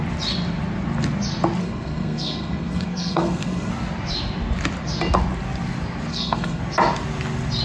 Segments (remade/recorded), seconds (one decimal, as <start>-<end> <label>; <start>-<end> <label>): 0.0-1.6 recorded; 1.6-3.7 remade; 3.7-6.1 recorded; 6.1-6.6 remade; 6.6-7.6 recorded